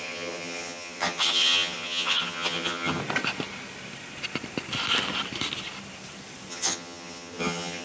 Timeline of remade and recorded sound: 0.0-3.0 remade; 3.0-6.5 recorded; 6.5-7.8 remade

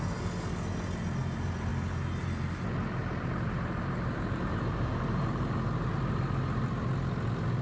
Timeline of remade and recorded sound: 0.0-3.0 recorded; 3.0-5.5 remade; 5.5-7.6 recorded